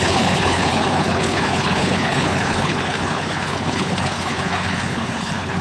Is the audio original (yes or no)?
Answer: no